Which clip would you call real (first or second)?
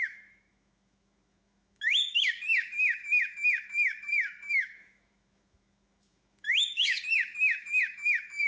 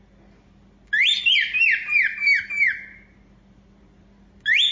second